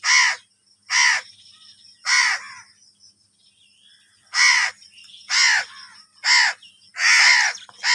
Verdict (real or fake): real